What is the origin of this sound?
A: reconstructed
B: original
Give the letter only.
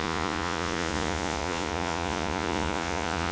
A